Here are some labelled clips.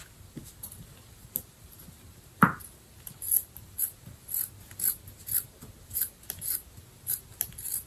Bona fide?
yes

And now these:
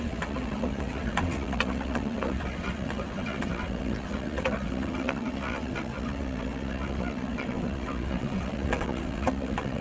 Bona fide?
no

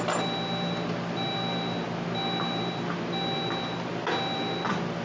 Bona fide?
yes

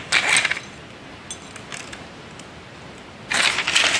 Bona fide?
yes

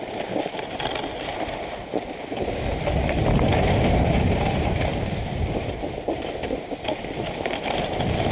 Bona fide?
yes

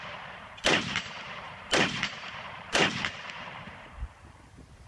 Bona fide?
no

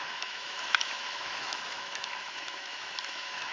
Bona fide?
no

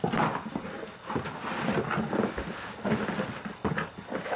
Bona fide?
yes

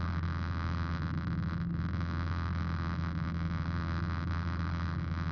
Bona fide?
yes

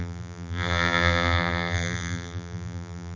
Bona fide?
no